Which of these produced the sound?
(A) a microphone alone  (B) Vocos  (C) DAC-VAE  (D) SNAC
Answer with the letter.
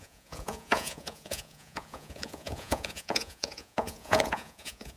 B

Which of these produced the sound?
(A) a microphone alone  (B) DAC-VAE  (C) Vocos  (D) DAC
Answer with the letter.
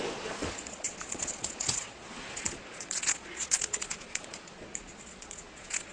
C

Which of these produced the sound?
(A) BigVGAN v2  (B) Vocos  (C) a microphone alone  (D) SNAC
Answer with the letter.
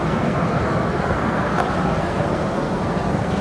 D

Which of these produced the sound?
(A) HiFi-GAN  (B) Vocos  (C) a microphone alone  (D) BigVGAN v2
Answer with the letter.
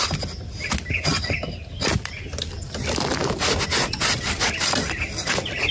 C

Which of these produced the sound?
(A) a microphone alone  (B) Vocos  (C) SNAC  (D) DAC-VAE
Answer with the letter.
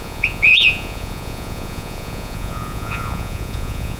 B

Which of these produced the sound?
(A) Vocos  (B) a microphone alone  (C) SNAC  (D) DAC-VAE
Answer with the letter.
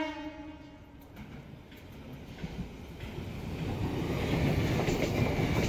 B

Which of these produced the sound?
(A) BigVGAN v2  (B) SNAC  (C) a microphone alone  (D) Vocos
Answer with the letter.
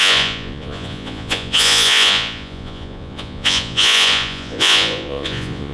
D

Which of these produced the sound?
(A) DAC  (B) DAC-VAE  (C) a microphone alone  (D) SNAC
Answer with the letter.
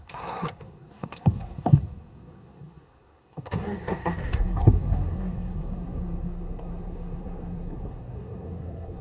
D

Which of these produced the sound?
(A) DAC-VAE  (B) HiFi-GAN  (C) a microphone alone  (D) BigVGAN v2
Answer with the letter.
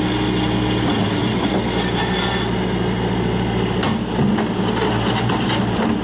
C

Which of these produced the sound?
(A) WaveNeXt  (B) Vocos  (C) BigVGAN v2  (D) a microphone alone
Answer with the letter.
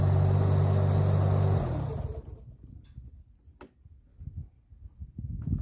D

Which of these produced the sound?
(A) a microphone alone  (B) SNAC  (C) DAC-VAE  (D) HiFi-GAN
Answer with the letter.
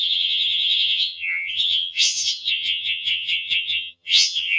D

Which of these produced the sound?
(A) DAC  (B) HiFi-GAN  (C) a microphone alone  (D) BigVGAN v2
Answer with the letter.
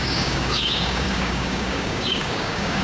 A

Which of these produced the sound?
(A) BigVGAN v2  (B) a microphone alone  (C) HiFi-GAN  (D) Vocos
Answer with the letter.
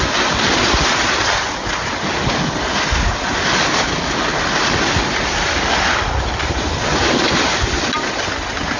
B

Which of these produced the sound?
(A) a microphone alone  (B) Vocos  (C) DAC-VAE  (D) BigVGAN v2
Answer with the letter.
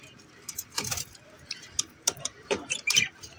D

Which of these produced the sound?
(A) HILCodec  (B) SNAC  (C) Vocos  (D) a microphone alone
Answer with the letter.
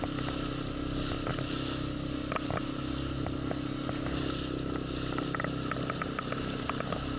D